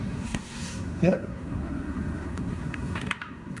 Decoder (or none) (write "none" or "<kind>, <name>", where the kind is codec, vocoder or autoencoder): codec, SNAC